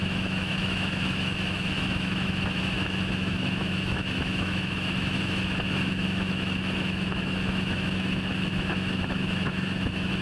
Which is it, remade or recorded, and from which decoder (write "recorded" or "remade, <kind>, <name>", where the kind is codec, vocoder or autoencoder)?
remade, autoencoder, DAC-VAE